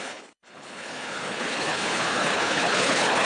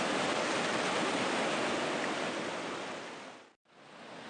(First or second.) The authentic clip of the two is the second